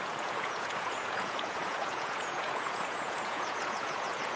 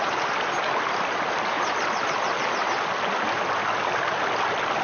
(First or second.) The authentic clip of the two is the second